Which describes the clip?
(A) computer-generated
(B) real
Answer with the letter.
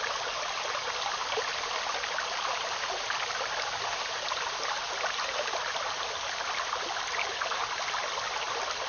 B